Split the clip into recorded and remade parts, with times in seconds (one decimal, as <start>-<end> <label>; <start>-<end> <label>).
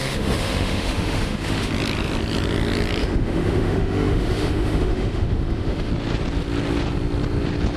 0.0-1.7 remade; 1.7-3.0 recorded; 3.0-5.9 remade; 5.9-7.8 recorded